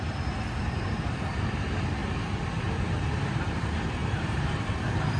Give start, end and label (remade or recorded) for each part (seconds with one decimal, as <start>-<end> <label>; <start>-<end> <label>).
0.0-5.2 remade